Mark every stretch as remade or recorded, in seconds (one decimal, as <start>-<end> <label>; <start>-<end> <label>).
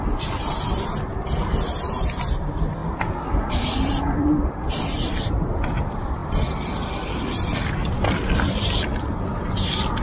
0.0-2.8 remade; 2.8-3.3 recorded; 3.3-10.0 remade